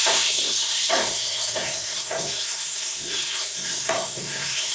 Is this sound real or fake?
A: fake